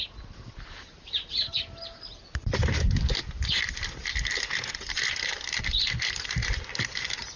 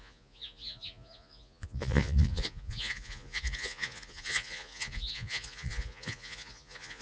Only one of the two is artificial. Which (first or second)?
second